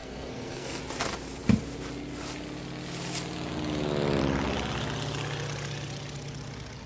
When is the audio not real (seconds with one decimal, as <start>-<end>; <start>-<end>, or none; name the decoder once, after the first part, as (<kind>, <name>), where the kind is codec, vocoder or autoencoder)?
0.0-0.8 (codec, SNAC)